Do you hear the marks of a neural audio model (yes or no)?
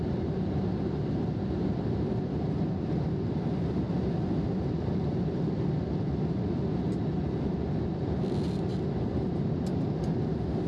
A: no